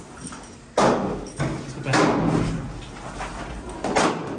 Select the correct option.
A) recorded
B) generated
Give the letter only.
A